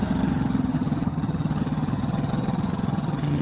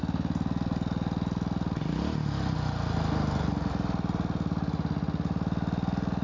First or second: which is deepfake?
first